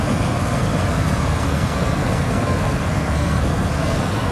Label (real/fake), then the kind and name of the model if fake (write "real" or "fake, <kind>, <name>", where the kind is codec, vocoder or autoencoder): fake, codec, SNAC